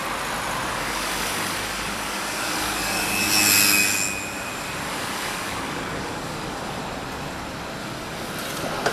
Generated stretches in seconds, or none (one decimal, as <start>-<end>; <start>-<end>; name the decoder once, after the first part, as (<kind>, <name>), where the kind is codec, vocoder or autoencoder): 0.7-3.3 (codec, DAC); 4.9-6.8; 7.8-8.3